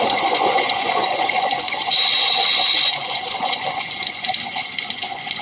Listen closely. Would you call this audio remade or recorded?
remade